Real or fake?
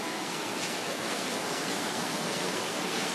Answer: fake